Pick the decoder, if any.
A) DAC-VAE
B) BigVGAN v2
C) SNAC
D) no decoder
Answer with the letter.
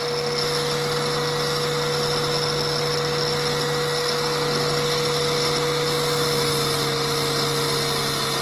D